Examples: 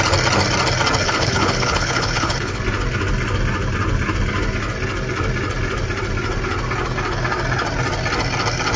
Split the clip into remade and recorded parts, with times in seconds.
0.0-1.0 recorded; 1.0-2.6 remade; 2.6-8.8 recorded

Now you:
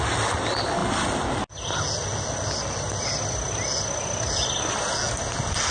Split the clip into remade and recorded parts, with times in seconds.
0.0-5.7 recorded

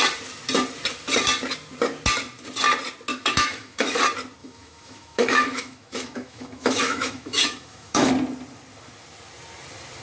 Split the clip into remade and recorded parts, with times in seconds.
0.0-3.1 recorded; 3.1-4.0 remade; 4.0-4.4 recorded; 4.4-8.1 remade; 8.1-10.0 recorded

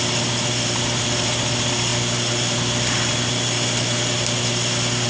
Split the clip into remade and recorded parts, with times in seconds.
0.0-5.1 recorded